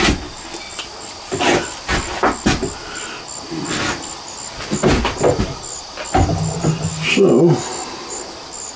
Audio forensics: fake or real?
real